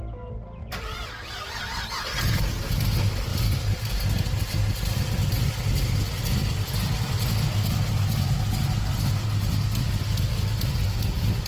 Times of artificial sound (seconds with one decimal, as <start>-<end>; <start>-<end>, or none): 0.6-1.3; 3.3-3.8; 6.4-8.3